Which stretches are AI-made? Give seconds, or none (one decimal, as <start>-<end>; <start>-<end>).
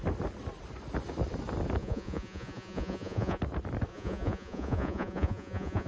1.8-3.4; 3.9-5.9